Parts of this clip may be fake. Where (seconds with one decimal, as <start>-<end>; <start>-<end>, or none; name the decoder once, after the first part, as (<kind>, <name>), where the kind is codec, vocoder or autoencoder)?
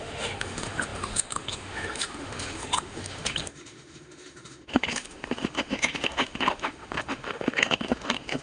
0.0-8.4 (autoencoder, DAC-VAE)